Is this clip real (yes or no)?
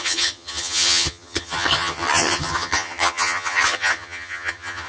no